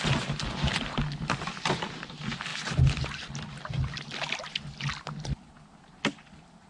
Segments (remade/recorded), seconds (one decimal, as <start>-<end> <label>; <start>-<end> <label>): 0.0-6.7 recorded